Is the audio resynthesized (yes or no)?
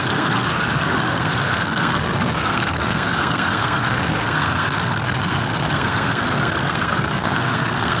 yes